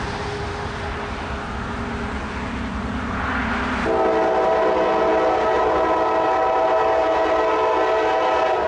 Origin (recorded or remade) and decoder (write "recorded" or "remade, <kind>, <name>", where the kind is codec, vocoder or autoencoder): recorded